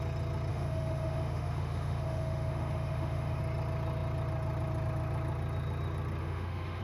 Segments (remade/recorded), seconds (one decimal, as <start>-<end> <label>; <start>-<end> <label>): 0.0-0.5 recorded; 0.5-3.4 remade; 3.4-6.2 recorded; 6.2-6.8 remade